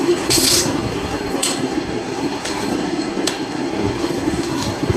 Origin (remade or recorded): remade